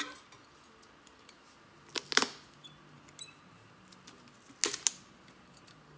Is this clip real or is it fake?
real